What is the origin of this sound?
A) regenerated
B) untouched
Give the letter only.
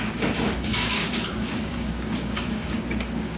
A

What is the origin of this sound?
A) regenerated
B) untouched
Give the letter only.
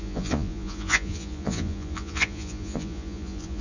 A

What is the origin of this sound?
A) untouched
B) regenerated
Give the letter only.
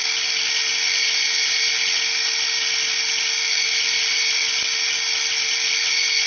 A